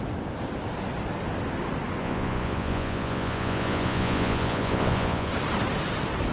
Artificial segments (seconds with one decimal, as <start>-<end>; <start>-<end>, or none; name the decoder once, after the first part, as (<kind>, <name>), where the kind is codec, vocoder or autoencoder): 2.0-5.3 (vocoder, Vocos)